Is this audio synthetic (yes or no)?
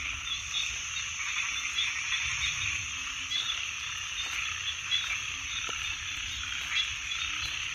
no